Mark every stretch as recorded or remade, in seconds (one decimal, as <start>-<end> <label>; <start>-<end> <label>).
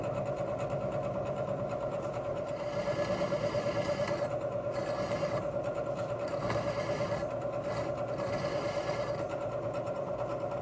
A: 0.0-10.6 recorded